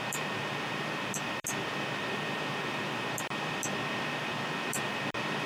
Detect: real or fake fake